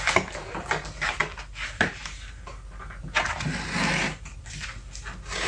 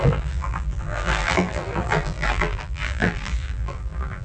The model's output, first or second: second